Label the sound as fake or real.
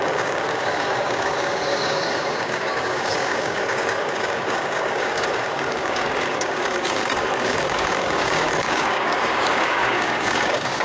fake